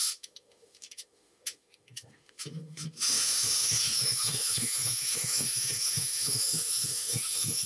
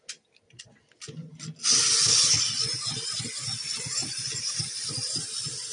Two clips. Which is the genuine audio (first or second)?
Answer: second